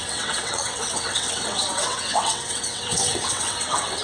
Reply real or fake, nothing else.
fake